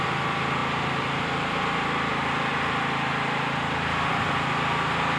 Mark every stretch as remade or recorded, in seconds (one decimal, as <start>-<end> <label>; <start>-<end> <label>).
0.0-5.2 recorded